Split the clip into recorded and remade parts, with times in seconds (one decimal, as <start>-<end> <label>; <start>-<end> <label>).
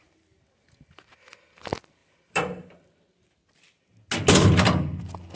0.0-2.0 recorded; 2.0-3.3 remade; 3.3-5.4 recorded